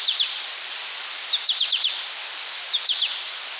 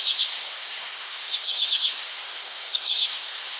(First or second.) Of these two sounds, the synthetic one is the second